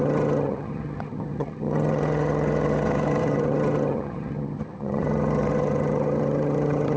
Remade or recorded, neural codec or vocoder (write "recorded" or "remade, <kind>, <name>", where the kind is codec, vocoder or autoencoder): remade, vocoder, HiFi-GAN